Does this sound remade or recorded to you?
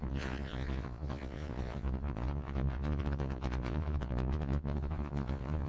remade